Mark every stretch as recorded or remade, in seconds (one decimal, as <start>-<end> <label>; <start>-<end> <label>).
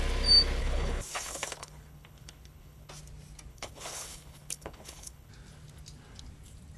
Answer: 0.0-0.6 recorded; 0.6-2.9 remade; 2.9-3.5 recorded; 3.5-5.3 remade; 5.3-6.8 recorded